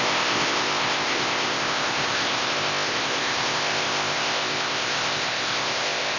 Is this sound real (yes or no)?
no